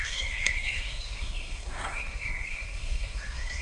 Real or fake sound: fake